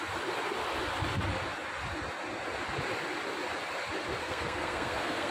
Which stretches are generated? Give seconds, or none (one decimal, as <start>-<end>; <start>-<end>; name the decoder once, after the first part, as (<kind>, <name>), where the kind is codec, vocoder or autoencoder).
4.2-5.3 (codec, SNAC)

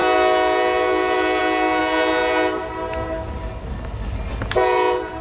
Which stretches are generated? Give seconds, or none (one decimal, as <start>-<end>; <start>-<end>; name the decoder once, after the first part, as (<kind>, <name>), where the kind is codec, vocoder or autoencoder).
none

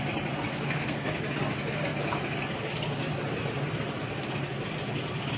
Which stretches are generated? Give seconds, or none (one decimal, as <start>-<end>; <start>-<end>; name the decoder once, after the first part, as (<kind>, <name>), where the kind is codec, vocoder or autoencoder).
0.5-1.1 (codec, SNAC)

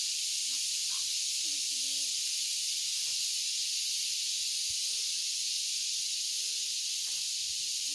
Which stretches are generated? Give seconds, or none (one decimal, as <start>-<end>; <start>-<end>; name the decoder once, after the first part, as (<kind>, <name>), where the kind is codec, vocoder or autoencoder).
3.1-7.3 (vocoder, Vocos)

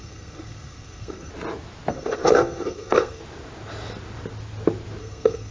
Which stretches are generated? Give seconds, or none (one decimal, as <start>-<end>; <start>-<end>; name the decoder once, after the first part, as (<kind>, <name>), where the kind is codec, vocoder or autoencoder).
0.0-1.3 (codec, SNAC); 1.9-3.2; 5.0-5.5

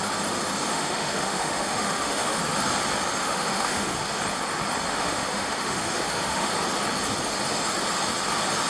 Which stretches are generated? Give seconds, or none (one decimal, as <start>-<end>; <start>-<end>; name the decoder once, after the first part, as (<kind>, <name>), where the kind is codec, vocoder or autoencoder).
0.7-2.4 (autoencoder, DAC-VAE); 3.2-4.2; 4.9-6.5